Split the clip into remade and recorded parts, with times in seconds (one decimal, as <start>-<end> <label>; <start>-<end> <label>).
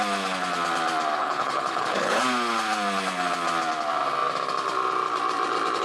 0.0-1.2 recorded; 1.2-2.2 remade; 2.2-5.8 recorded